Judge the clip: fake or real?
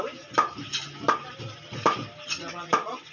real